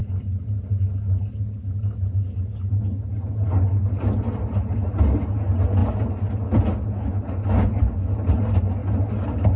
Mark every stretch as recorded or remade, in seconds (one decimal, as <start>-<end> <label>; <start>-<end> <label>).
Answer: 0.0-9.6 recorded